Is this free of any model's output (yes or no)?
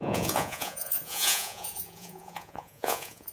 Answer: no